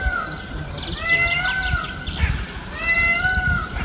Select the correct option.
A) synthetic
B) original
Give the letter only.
B